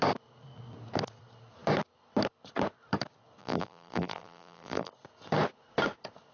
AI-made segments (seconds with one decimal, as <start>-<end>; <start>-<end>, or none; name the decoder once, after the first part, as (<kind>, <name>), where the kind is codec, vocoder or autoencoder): 3.4-4.9 (vocoder, BigVGAN v2)